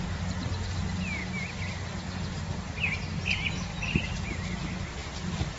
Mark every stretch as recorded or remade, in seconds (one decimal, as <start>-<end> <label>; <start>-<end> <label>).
0.0-5.6 recorded